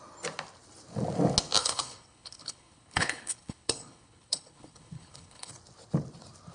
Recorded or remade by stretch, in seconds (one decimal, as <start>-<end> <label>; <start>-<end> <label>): 0.0-1.6 recorded; 1.6-5.5 remade; 5.5-6.5 recorded